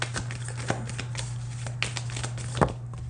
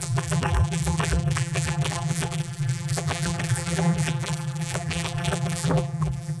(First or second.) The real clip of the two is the first